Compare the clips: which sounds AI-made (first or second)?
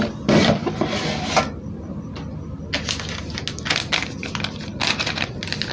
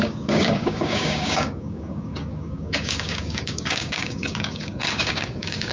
second